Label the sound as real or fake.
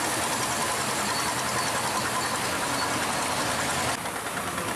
real